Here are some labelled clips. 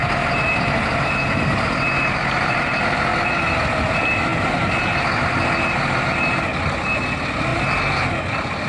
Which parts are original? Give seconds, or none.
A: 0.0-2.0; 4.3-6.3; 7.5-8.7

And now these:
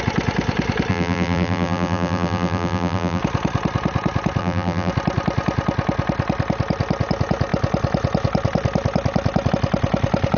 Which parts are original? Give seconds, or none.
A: 0.0-0.9; 3.2-4.4; 4.9-10.4